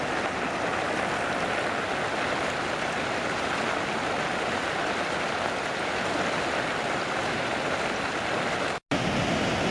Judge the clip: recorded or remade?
recorded